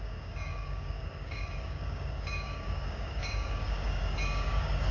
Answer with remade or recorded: remade